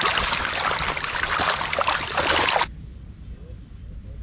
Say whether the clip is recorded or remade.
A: recorded